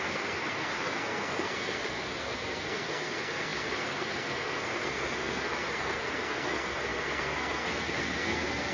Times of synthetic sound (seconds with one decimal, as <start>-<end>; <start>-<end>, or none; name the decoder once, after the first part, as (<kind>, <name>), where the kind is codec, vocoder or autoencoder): 0.0-8.7 (codec, SNAC)